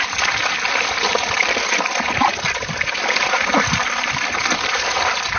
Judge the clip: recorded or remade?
remade